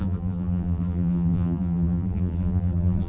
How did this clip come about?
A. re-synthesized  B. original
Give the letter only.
A